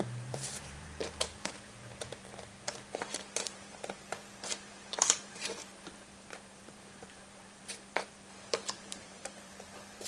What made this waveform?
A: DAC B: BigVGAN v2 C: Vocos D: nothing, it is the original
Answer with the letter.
B